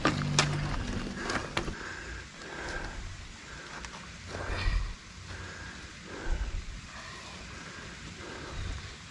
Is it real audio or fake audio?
real